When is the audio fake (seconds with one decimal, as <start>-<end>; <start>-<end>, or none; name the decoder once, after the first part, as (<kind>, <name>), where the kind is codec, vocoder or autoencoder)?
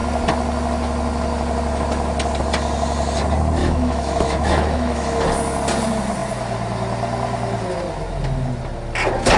3.6-5.2 (autoencoder, DAC-VAE)